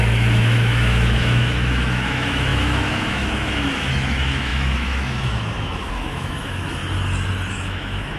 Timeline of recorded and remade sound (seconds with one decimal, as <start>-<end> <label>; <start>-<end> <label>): 0.0-6.8 remade; 6.8-7.5 recorded; 7.5-8.2 remade